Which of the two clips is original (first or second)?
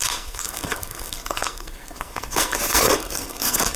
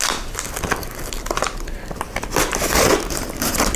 second